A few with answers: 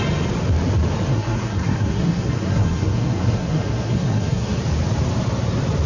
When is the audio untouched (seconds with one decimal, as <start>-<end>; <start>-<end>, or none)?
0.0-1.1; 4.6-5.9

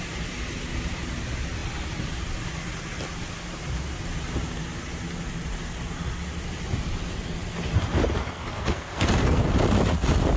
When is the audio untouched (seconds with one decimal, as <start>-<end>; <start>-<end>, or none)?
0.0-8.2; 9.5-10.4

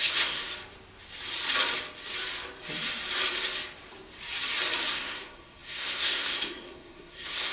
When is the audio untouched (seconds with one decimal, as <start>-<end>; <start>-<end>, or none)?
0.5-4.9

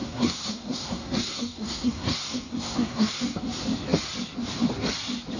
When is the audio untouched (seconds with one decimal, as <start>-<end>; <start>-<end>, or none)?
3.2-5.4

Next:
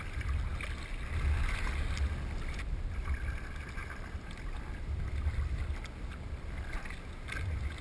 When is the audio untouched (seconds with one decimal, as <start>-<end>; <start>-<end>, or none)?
0.0-7.8